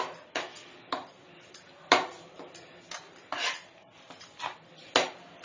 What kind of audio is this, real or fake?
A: real